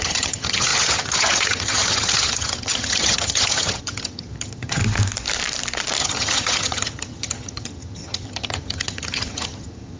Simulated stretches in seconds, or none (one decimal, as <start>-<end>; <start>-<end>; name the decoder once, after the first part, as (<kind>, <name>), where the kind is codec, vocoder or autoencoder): 0.0-4.8 (vocoder, HiFi-GAN); 6.0-10.0